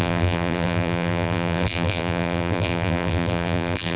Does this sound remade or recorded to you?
remade